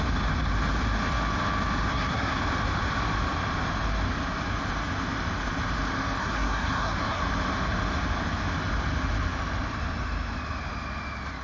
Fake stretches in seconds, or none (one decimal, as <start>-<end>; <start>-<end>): 1.9-2.4; 6.2-7.2